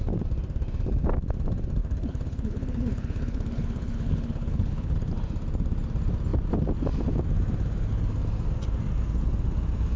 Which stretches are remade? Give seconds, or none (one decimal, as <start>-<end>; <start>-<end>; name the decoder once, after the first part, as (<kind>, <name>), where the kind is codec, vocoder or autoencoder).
1.8-5.1 (codec, HILCodec)